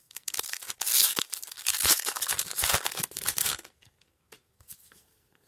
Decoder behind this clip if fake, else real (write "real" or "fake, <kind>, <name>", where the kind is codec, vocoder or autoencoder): fake, codec, SNAC